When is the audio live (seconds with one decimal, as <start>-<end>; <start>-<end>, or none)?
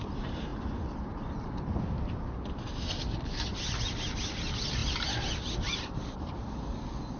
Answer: 0.0-7.2